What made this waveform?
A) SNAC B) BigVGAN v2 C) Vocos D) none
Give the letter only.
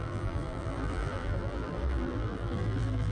B